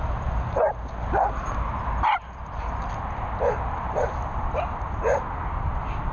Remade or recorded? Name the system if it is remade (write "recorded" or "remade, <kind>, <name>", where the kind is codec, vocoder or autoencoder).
recorded